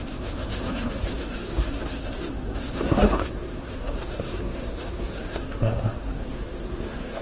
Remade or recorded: remade